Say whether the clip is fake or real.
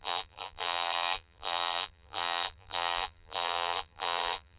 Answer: fake